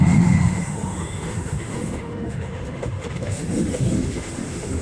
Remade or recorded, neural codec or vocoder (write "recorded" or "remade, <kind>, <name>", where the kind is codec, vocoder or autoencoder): remade, autoencoder, DAC-VAE